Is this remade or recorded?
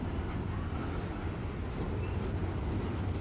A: recorded